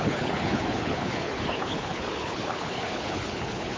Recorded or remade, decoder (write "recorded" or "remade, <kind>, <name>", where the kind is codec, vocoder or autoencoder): remade, codec, HILCodec